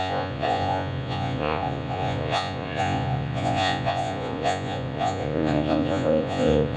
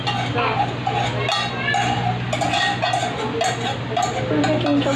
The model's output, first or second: first